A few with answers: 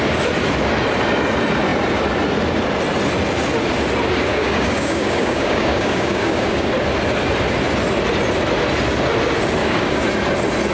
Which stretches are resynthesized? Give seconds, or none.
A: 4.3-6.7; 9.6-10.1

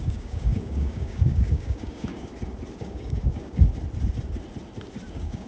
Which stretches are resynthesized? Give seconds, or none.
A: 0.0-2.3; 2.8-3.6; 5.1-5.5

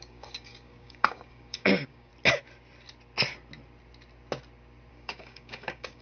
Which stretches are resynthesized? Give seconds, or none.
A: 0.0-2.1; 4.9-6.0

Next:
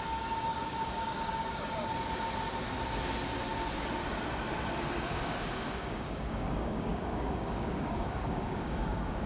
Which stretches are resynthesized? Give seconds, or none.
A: 0.0-1.9; 5.1-9.3